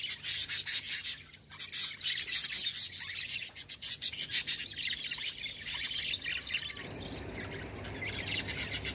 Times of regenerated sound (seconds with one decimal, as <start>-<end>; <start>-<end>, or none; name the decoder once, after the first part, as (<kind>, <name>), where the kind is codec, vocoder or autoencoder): 2.7-4.5 (vocoder, Vocos)